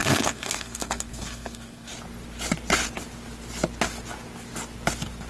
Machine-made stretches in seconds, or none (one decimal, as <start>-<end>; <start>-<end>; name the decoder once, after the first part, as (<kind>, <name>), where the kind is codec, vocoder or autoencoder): 0.0-1.9 (codec, SNAC)